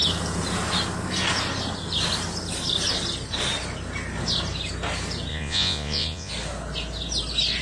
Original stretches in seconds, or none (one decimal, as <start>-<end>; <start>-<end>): 0.0-5.3; 6.3-7.6